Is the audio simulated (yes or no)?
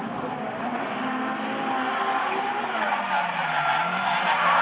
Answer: no